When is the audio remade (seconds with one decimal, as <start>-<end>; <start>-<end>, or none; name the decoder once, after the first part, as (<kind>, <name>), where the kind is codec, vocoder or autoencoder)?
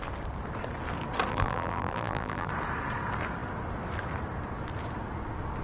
1.3-2.5 (vocoder, BigVGAN v2)